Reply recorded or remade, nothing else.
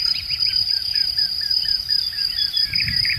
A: remade